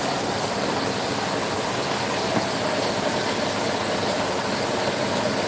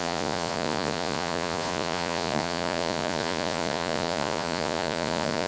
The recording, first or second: first